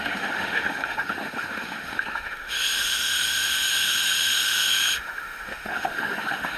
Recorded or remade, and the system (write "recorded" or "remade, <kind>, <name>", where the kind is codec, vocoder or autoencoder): remade, autoencoder, DAC-VAE